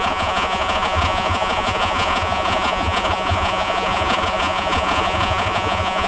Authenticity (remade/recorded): remade